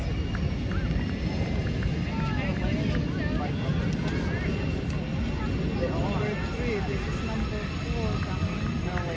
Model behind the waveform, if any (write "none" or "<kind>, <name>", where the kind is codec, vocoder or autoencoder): none